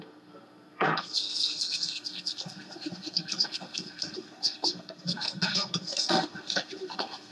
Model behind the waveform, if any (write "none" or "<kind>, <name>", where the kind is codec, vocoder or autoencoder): codec, SNAC